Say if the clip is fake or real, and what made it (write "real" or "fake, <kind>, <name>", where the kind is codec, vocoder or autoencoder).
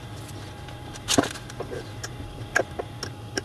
real